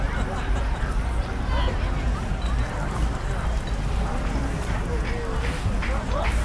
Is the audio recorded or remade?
recorded